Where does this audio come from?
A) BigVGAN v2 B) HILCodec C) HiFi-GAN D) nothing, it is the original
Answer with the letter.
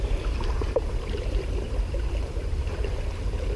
A